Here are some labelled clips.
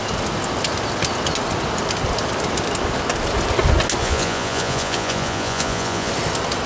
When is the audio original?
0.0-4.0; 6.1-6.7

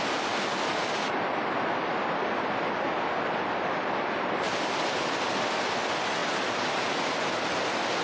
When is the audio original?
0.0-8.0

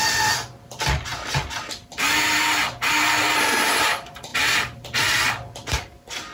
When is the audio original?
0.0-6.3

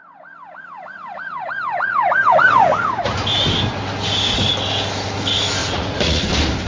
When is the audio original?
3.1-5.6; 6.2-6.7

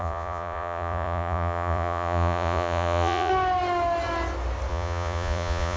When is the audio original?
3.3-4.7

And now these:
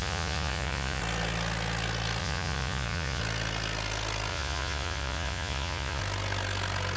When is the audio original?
1.0-2.2; 3.2-4.3; 6.0-7.0